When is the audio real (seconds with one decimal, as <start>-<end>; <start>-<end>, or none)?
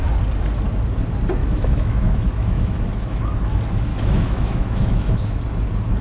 0.0-1.4; 3.2-3.9; 5.4-6.0